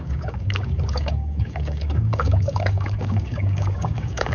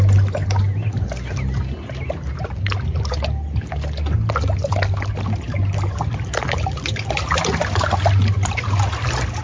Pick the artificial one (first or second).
first